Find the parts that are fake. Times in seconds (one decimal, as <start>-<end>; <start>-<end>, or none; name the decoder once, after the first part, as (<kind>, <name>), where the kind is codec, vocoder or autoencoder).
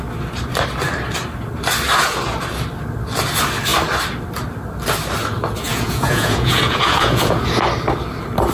5.7-7.6 (vocoder, Vocos)